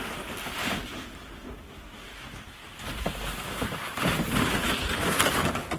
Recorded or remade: recorded